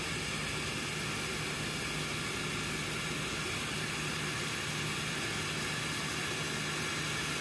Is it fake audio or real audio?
real